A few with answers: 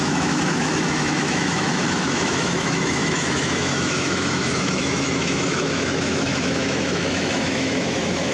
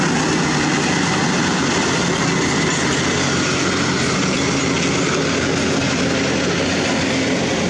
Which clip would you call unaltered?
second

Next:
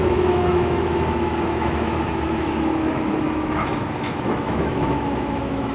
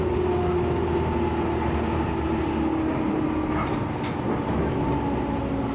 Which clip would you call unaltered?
second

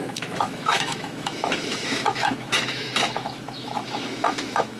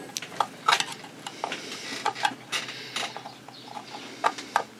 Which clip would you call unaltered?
second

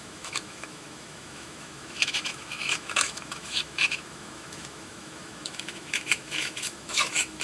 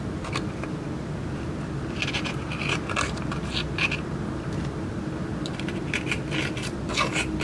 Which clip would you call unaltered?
second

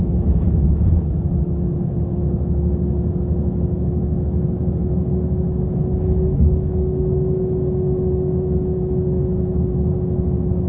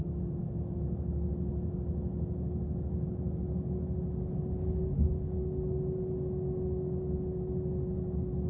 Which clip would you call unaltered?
second